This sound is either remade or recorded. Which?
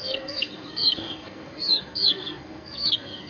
remade